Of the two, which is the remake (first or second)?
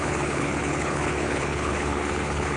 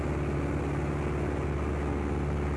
first